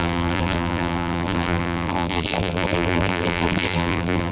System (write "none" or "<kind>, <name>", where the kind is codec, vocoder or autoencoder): vocoder, BigVGAN v2